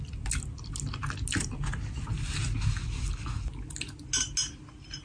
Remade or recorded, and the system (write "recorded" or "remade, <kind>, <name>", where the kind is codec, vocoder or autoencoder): recorded